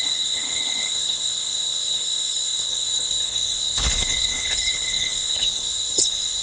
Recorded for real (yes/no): no